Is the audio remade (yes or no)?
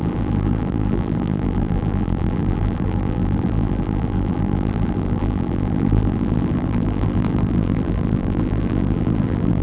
yes